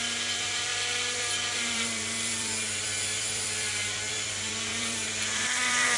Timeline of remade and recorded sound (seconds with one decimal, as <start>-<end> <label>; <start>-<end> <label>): 0.0-6.0 remade